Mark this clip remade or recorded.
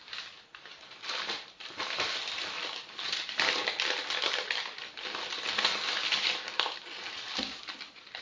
recorded